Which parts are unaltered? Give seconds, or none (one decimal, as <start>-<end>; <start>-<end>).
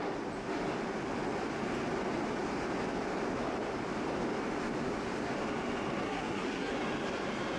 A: 0.0-6.0; 6.7-7.6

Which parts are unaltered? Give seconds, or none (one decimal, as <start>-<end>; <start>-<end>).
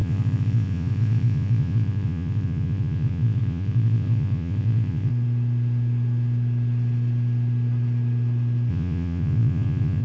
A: 5.1-8.7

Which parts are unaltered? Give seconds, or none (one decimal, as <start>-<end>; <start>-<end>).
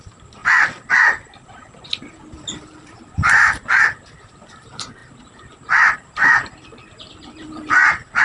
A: 0.0-8.2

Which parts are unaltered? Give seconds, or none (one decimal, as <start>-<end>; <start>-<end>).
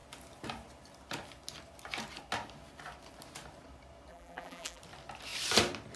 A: 0.0-4.1; 4.8-6.0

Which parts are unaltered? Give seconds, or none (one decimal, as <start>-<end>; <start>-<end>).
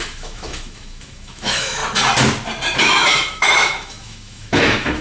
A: 1.8-2.8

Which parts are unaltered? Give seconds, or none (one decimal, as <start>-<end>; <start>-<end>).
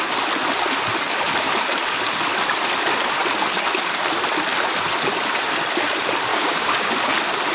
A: 0.0-6.3; 6.9-7.5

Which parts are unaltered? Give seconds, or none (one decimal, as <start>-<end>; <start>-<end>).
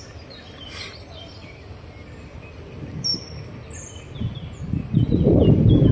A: 0.0-5.9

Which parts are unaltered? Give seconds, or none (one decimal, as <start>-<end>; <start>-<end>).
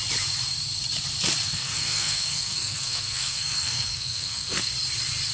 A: 0.0-1.5; 4.7-5.3